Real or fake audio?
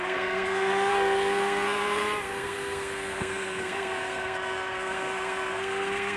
fake